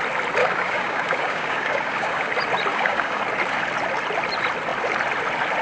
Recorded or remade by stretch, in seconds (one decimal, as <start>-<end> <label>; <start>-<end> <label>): 0.0-0.4 recorded; 0.4-2.3 remade; 2.3-2.7 recorded; 2.7-3.2 remade; 3.2-5.6 recorded